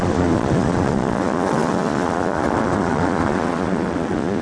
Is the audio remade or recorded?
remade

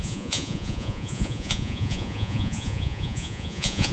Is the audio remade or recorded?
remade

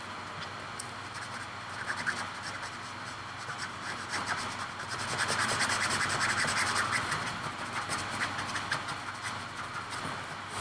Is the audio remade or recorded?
recorded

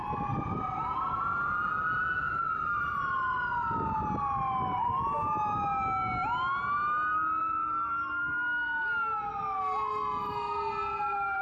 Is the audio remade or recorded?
recorded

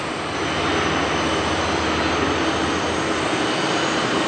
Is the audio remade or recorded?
recorded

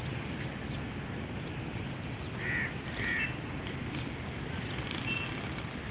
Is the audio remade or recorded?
recorded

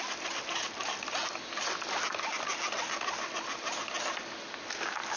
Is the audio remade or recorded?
recorded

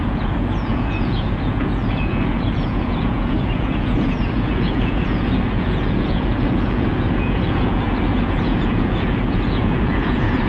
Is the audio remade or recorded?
remade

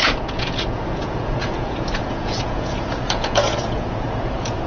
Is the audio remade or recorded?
remade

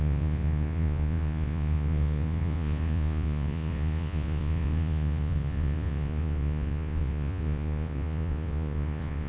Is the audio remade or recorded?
remade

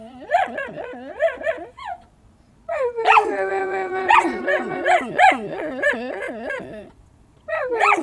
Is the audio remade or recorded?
remade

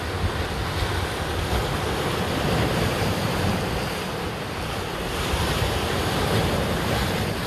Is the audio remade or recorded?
recorded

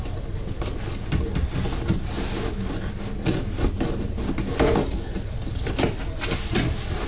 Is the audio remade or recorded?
recorded